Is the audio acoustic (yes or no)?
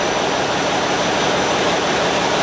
yes